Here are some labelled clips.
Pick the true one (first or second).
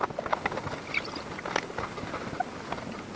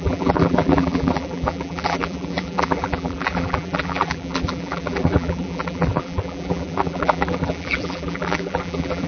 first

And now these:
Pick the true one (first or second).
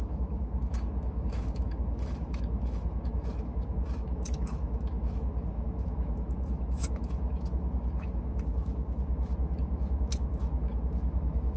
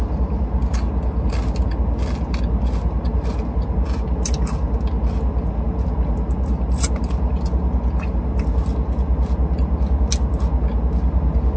second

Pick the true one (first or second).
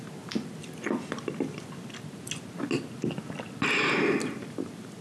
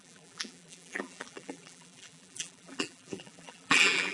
first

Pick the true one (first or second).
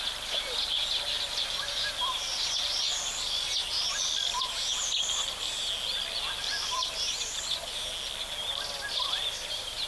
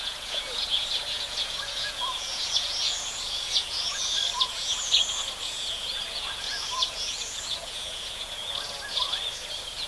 first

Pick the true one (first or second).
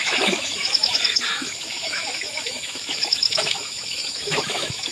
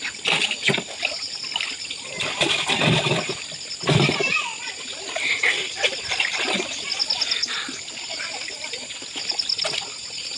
second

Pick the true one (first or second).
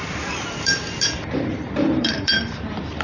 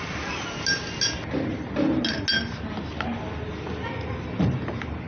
second